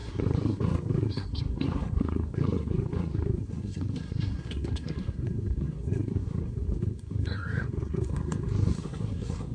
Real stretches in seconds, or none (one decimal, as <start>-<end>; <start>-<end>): none